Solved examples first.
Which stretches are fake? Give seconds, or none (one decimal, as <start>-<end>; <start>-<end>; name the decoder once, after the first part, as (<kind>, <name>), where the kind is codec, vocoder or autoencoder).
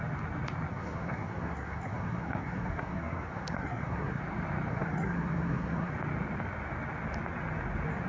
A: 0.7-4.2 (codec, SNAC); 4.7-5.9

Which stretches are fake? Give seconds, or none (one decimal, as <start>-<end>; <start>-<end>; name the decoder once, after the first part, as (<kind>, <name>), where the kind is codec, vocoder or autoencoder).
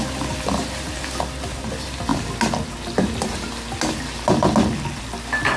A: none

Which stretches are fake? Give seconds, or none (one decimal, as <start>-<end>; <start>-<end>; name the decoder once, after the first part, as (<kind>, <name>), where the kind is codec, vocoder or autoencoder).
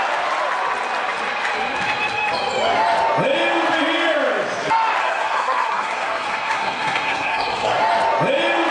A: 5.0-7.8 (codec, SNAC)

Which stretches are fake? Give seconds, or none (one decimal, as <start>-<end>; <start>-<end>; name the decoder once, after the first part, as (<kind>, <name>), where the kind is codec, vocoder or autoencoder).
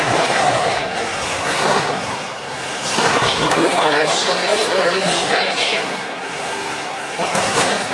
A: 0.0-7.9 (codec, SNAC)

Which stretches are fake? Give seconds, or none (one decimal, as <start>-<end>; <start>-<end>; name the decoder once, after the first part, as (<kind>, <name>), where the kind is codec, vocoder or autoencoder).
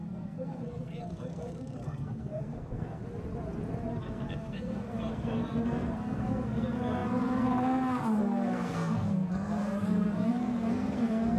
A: 0.0-3.0 (codec, SNAC); 4.0-11.4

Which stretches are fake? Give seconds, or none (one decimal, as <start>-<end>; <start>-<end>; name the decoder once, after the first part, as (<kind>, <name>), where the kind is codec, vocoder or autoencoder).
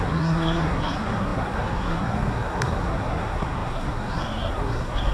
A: 0.0-5.1 (codec, SNAC)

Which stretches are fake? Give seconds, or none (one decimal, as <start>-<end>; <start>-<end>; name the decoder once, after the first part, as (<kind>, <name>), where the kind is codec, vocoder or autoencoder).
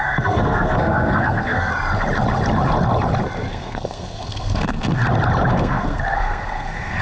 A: 0.0-1.7 (codec, SNAC); 3.5-5.0; 5.5-7.0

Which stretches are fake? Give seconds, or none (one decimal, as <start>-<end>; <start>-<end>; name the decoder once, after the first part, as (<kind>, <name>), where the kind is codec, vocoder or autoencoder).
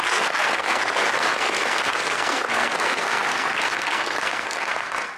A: 0.0-5.2 (codec, SNAC)